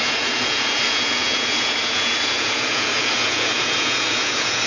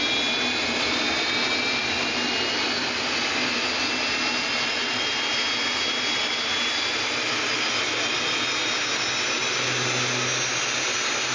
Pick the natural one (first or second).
second